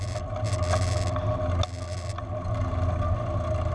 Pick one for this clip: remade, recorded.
recorded